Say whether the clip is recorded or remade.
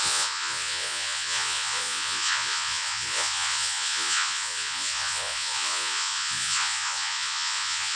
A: remade